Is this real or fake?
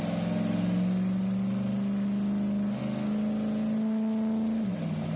real